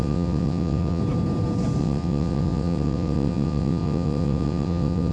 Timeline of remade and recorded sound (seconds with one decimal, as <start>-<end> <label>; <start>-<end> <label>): 0.0-1.0 remade; 1.0-1.8 recorded; 1.8-5.1 remade